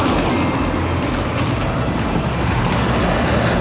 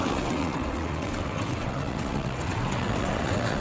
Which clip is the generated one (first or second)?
second